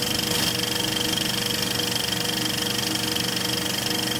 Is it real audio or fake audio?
real